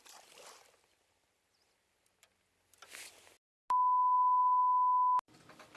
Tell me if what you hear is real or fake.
real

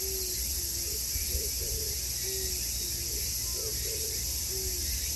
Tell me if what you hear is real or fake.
real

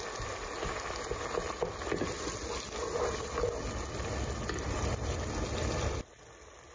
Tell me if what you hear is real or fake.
real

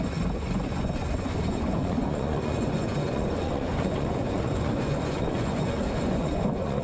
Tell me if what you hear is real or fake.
fake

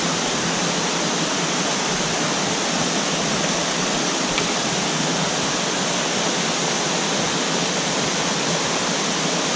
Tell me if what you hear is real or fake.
real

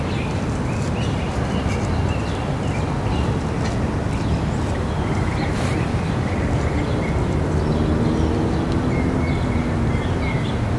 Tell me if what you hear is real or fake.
real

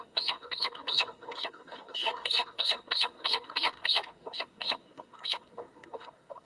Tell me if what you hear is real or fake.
fake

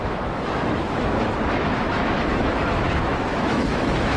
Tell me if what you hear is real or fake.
fake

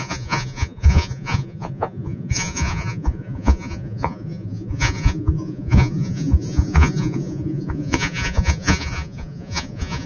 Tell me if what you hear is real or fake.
fake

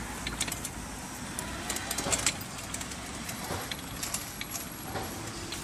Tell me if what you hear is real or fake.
real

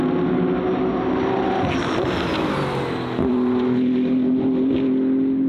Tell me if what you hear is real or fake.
real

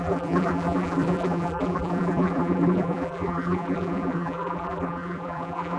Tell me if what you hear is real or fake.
fake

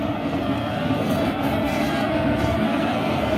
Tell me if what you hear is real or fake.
fake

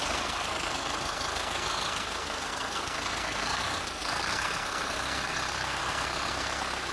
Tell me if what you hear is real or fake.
fake